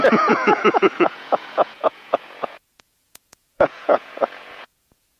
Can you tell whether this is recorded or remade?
remade